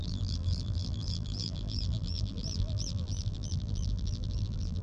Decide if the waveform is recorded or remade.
remade